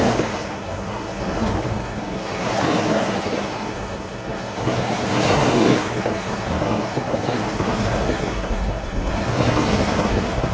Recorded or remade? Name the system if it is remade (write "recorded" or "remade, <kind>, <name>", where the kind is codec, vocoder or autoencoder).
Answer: remade, codec, SNAC